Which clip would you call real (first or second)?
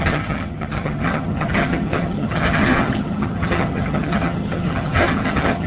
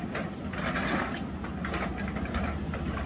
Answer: second